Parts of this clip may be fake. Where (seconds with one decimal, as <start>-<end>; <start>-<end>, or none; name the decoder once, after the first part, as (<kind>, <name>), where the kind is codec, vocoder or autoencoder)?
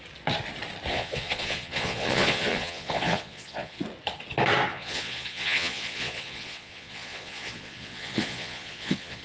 0.9-3.8 (vocoder, Vocos); 4.7-9.2